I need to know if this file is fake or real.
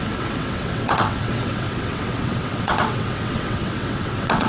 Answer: fake